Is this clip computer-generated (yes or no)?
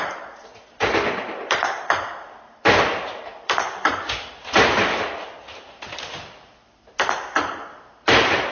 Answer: yes